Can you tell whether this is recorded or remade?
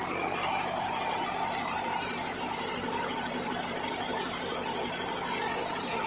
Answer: remade